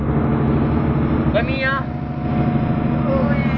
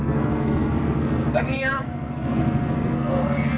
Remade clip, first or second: second